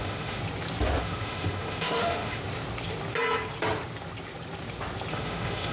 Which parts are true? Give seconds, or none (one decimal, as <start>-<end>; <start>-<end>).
0.4-1.0; 2.4-5.1